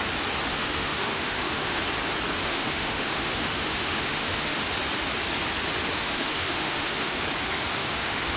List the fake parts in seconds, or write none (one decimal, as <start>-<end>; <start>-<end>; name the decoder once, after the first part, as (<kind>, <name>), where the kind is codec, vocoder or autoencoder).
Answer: 0.5-1.8 (autoencoder, DAC-VAE); 2.4-4.6; 6.0-7.2; 7.8-8.4